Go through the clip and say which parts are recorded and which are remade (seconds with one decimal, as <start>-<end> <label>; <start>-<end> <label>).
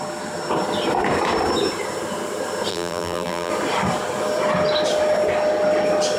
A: 0.0-2.7 recorded; 2.7-3.5 remade; 3.5-6.2 recorded